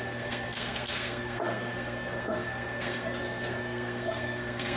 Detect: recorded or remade remade